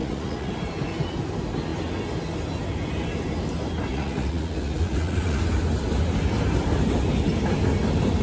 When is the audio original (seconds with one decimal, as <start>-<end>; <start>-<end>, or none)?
0.5-3.9; 5.4-8.2